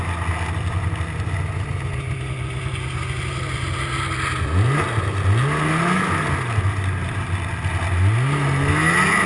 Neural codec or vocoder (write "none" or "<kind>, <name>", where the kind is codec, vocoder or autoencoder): none